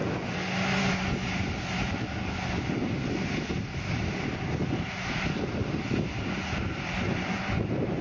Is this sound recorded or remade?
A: recorded